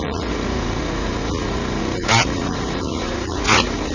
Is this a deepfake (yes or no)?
yes